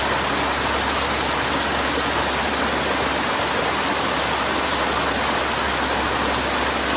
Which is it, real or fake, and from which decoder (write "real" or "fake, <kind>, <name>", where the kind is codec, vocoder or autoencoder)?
real